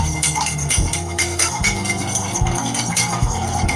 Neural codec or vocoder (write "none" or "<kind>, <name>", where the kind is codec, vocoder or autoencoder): codec, SNAC